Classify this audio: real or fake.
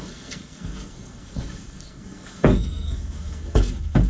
fake